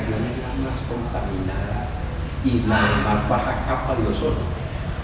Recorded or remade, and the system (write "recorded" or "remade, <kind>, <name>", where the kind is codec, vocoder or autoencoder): recorded